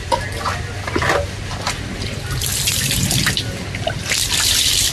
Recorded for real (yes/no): yes